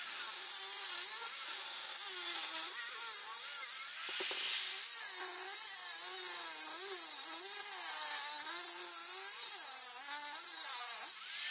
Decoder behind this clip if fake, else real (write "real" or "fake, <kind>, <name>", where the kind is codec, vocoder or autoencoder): real